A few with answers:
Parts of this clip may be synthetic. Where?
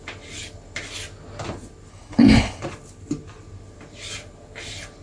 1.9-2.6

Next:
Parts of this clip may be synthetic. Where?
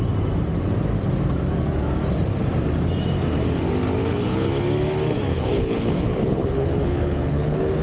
4.0-4.5; 5.3-7.8